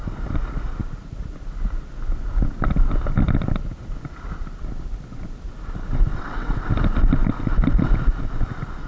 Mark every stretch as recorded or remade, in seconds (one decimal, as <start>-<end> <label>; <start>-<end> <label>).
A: 0.0-6.1 recorded; 6.1-6.7 remade; 6.7-8.9 recorded